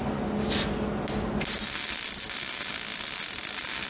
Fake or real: real